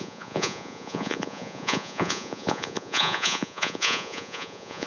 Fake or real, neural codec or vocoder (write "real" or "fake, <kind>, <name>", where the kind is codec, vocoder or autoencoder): fake, vocoder, Vocos